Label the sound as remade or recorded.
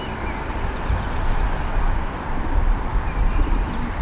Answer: recorded